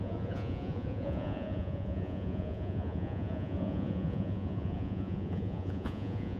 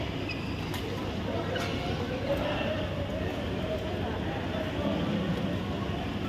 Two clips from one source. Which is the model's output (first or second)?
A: first